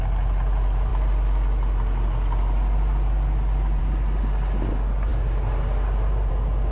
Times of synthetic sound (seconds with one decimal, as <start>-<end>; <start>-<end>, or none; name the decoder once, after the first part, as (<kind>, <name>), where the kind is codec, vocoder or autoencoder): none